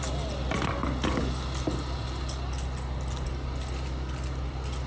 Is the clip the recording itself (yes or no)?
yes